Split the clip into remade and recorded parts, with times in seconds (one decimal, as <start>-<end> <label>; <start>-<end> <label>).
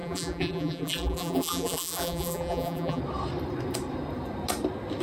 0.0-3.0 remade; 3.0-5.0 recorded